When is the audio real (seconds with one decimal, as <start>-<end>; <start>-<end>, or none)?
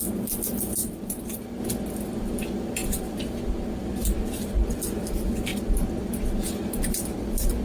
0.0-7.6